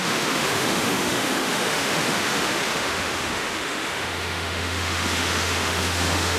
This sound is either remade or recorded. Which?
remade